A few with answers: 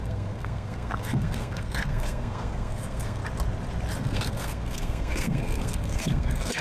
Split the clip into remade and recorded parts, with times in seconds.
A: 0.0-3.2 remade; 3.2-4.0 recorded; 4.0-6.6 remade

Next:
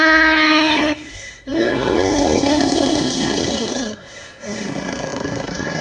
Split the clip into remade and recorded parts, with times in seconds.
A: 0.0-5.8 remade